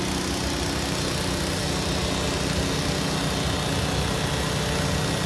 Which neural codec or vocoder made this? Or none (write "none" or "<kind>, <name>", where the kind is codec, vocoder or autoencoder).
none